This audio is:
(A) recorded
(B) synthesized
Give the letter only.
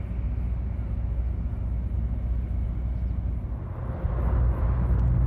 A